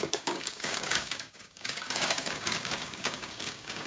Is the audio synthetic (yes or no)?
yes